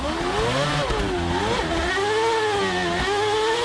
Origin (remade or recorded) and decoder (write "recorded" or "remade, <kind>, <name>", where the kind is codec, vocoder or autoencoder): recorded